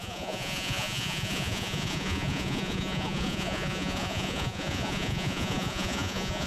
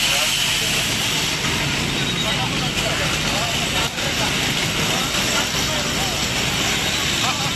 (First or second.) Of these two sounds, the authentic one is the second